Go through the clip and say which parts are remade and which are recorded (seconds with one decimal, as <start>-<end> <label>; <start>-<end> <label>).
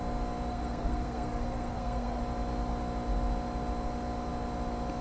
0.0-0.5 recorded; 0.5-2.2 remade; 2.2-5.0 recorded